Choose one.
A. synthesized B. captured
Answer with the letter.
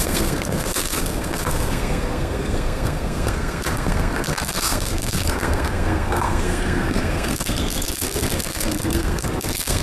A